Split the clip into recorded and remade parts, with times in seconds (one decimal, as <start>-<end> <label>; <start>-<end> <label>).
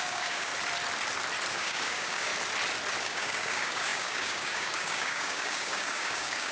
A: 0.0-0.5 remade; 0.5-1.5 recorded; 1.5-2.3 remade; 2.3-3.0 recorded; 3.0-6.5 remade